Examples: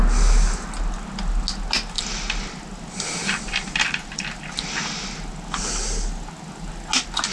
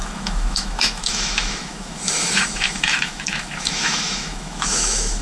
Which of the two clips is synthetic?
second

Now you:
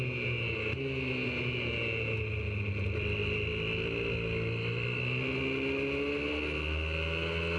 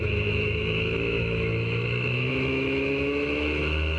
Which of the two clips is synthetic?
second